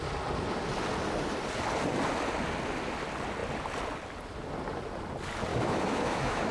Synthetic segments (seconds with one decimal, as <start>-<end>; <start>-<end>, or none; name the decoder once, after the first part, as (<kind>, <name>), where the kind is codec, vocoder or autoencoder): 5.5-6.5 (autoencoder, DAC-VAE)

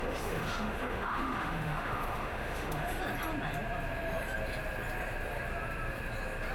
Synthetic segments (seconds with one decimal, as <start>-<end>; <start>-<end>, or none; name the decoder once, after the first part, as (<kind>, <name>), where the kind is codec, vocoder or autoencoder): 0.0-3.0 (autoencoder, DAC-VAE)

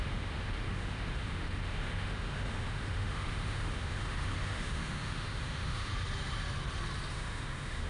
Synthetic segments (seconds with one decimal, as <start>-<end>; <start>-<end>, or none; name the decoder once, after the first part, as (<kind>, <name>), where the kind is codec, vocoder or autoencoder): 0.0-5.9 (autoencoder, DAC-VAE); 7.1-7.9

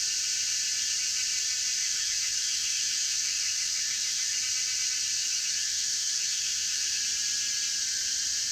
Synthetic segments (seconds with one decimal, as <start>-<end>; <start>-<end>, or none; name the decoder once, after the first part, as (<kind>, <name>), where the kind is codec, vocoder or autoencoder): 1.8-4.4 (autoencoder, DAC-VAE); 5.2-7.0

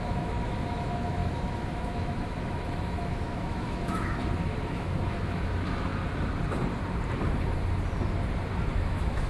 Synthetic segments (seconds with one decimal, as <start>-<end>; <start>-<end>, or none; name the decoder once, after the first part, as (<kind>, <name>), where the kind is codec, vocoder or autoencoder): 0.0-5.9 (autoencoder, DAC-VAE); 8.7-9.3

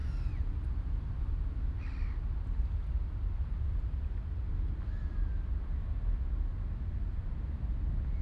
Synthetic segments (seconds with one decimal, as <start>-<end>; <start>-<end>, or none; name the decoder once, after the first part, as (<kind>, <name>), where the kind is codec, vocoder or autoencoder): none

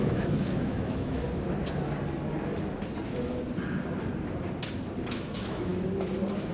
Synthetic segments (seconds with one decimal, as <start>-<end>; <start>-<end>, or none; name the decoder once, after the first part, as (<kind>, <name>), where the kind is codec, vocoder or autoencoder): 0.0-1.2 (autoencoder, DAC-VAE); 5.1-5.7

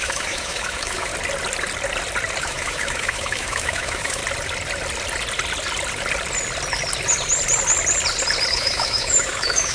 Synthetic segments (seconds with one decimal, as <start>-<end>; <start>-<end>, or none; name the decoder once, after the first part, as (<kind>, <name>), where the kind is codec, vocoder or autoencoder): 0.0-1.1 (autoencoder, DAC-VAE); 2.4-4.2; 8.5-9.7